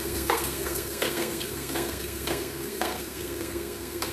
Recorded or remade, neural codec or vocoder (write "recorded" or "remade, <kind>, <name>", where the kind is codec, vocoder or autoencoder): remade, codec, SNAC